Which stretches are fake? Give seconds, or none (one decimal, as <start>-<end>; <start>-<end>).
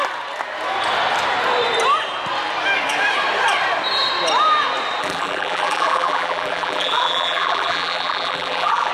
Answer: 5.0-8.9